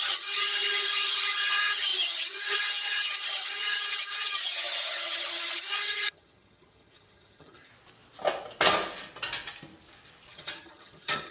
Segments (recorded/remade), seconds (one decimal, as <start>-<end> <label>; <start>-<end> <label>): 0.0-7.7 remade; 7.7-10.3 recorded; 10.3-11.3 remade